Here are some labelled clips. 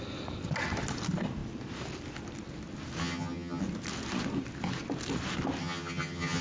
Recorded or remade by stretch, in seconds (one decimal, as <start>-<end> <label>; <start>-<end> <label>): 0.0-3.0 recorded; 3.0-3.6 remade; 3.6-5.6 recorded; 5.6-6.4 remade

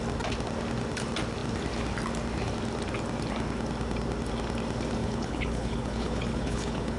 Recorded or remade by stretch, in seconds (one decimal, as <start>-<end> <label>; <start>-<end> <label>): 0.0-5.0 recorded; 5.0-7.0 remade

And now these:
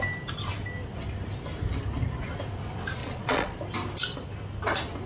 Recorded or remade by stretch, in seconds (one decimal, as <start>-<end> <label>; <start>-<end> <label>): 0.0-3.0 recorded; 3.0-3.6 remade; 3.6-5.1 recorded

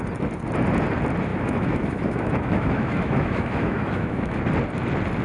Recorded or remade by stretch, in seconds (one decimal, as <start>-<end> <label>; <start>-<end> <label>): 0.0-1.3 recorded; 1.3-4.4 remade; 4.4-5.2 recorded

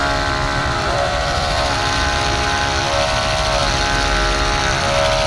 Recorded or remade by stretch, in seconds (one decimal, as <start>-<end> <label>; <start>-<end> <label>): 0.0-0.6 recorded; 0.6-2.6 remade; 2.6-5.3 recorded